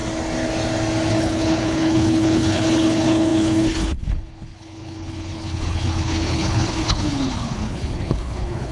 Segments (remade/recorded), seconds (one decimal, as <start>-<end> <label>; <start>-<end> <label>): 0.0-1.1 recorded; 1.1-8.7 remade